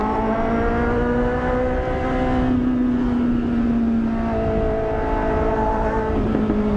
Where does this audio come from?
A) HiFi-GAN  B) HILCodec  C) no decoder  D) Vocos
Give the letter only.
C